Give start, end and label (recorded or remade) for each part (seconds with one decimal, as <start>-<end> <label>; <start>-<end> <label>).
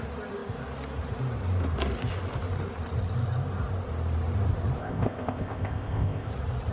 0.0-4.8 recorded; 4.8-6.3 remade; 6.3-6.7 recorded